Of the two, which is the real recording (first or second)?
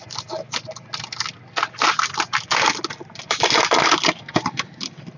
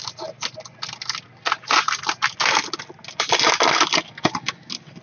second